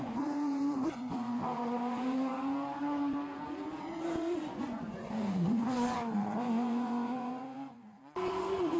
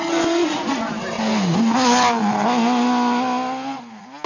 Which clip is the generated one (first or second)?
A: first